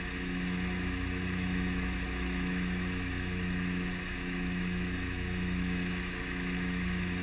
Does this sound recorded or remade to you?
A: remade